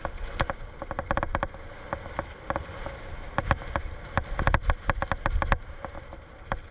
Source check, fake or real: real